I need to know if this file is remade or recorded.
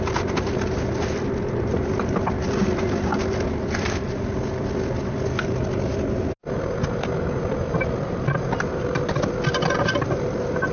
recorded